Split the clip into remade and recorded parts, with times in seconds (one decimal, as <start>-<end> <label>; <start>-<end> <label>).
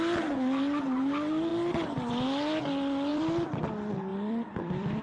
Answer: 0.0-3.1 recorded; 3.1-3.6 remade; 3.6-4.1 recorded; 4.1-5.0 remade